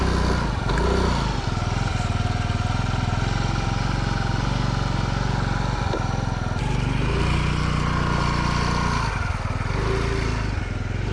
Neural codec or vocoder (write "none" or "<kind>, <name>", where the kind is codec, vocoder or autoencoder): none